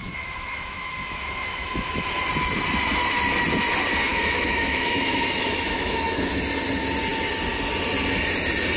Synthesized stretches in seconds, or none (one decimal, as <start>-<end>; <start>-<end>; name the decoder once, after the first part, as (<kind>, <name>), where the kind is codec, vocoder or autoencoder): 0.0-2.2 (autoencoder, DAC-VAE); 4.1-6.4